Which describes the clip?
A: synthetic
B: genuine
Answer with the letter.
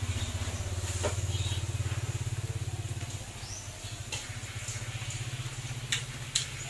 B